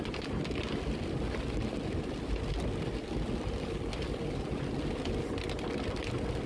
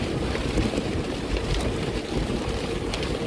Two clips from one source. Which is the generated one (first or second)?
second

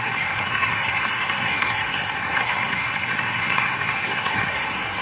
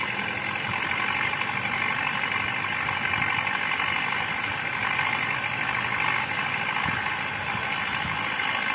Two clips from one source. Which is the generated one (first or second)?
first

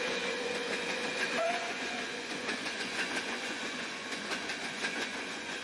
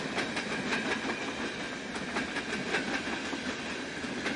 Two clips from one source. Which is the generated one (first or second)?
first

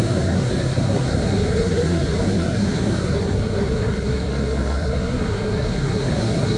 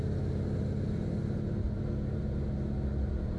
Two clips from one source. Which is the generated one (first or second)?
first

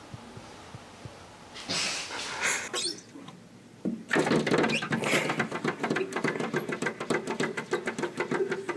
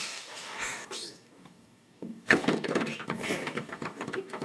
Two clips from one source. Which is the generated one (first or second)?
second